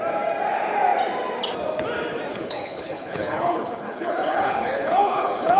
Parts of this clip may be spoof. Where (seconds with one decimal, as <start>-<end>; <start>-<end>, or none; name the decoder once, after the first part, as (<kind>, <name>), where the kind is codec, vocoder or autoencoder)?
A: 2.3-5.6 (codec, HILCodec)